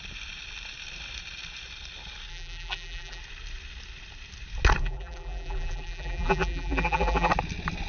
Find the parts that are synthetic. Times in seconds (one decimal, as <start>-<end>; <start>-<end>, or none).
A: 2.3-3.2; 4.8-7.3